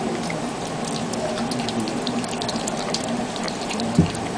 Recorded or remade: remade